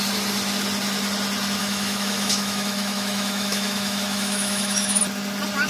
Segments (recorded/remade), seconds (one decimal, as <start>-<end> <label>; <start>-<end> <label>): 0.0-1.6 recorded; 1.6-5.0 remade; 5.0-5.7 recorded

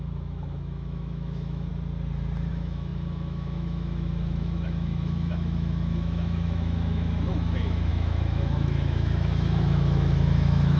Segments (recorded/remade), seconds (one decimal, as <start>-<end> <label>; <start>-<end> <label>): 0.0-1.7 remade; 1.7-2.5 recorded; 2.5-10.8 remade

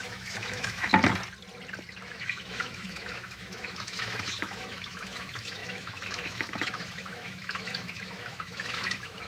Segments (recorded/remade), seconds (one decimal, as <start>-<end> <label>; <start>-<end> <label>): 0.0-0.9 remade; 0.9-2.0 recorded; 2.0-9.3 remade

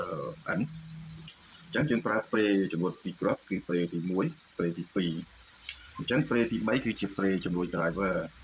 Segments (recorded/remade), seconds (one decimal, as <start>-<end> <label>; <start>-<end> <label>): 0.0-3.0 recorded; 3.0-3.7 remade; 3.7-8.4 recorded

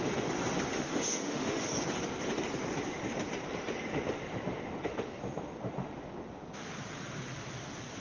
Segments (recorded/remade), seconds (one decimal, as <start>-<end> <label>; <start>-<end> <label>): 0.0-0.7 recorded; 0.7-1.7 remade; 1.7-8.0 recorded

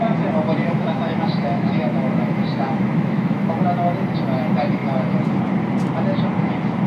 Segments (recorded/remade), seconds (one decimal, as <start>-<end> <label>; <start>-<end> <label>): 0.0-0.6 recorded; 0.6-3.5 remade; 3.5-6.9 recorded

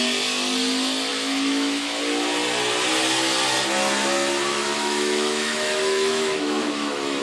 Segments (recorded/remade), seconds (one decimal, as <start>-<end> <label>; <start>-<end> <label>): 0.0-1.1 recorded; 1.1-2.0 remade; 2.0-4.5 recorded; 4.5-7.2 remade

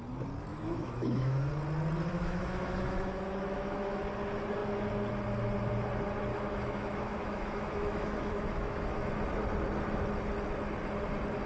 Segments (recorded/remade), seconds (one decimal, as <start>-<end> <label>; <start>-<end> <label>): 0.0-0.5 recorded; 0.5-1.5 remade; 1.5-2.1 recorded; 2.1-4.0 remade; 4.0-6.3 recorded; 6.3-9.1 remade; 9.1-11.5 recorded